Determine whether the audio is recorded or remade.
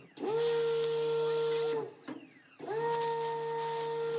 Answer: recorded